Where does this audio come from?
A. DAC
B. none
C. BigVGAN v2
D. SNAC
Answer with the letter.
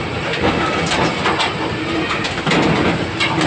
B